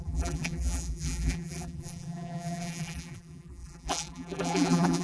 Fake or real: fake